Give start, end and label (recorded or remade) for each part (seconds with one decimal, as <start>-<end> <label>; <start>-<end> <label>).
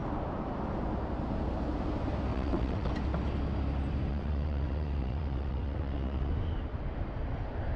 0.0-2.3 recorded; 2.3-2.9 remade; 2.9-4.1 recorded; 4.1-6.3 remade; 6.3-7.8 recorded